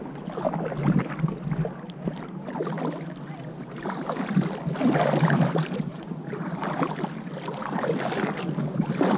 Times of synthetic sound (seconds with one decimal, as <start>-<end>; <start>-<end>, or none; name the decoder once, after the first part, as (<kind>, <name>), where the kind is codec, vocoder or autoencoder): 5.9-6.5 (vocoder, Vocos)